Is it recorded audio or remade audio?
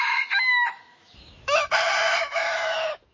remade